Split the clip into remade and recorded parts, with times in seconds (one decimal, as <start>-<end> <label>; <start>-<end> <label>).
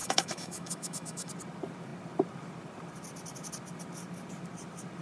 0.0-1.3 remade; 1.3-5.0 recorded